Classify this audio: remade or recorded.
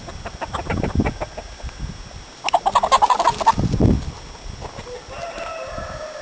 recorded